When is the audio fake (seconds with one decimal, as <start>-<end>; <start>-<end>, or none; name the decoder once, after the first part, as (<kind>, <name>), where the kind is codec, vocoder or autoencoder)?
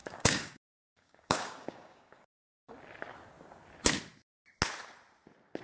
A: 0.0-2.7 (codec, DAC)